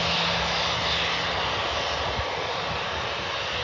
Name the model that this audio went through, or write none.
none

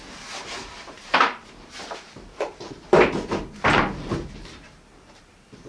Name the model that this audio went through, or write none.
vocoder, BigVGAN v2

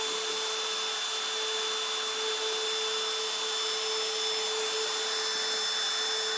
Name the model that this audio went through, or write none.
none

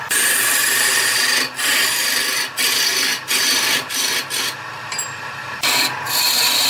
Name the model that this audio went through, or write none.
none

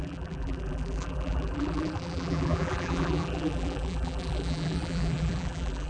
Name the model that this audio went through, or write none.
vocoder, BigVGAN v2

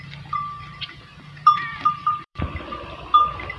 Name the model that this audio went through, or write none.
vocoder, BigVGAN v2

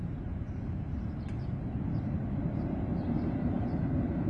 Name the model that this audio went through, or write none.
vocoder, BigVGAN v2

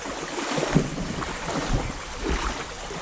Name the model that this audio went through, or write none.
vocoder, BigVGAN v2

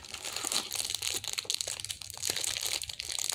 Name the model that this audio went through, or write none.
none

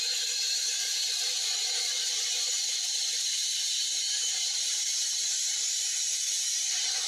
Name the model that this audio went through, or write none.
vocoder, BigVGAN v2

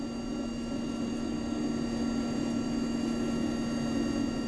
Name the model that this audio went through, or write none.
none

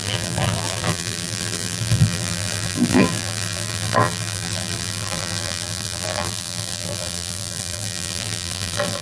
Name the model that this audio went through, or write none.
vocoder, BigVGAN v2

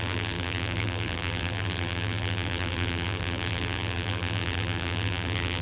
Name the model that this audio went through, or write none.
vocoder, BigVGAN v2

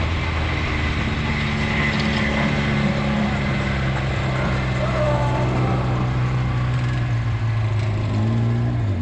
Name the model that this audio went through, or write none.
none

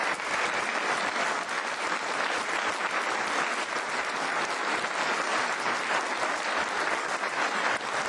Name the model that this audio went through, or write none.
none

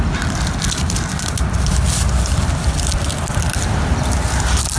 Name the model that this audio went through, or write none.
none